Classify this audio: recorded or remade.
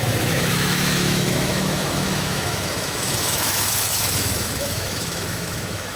remade